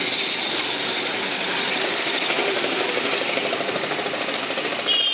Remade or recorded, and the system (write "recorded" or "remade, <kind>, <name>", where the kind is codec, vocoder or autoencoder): remade, vocoder, BigVGAN v2